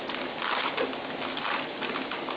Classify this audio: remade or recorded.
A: recorded